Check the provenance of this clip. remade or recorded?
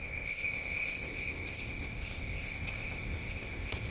remade